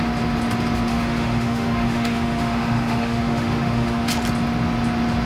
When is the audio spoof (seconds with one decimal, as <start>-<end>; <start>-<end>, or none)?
0.9-4.1